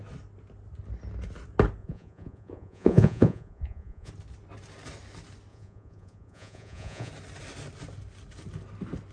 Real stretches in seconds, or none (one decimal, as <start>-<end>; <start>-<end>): 0.0-1.8; 4.1-5.5; 7.1-9.1